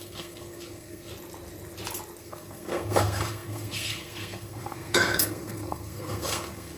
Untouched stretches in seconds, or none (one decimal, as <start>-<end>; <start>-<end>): 1.1-2.2